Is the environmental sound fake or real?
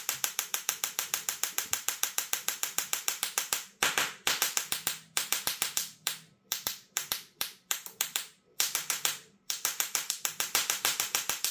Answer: fake